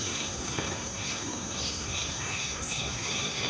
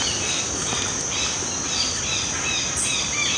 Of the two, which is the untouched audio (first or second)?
second